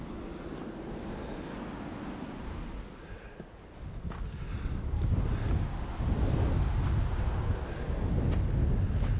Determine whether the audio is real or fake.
real